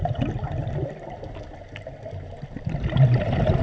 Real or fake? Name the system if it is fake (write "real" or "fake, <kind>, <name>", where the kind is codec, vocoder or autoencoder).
real